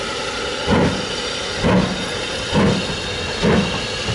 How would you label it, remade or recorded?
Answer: recorded